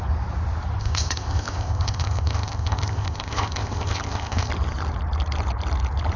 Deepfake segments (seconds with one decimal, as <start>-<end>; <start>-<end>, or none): 0.8-4.5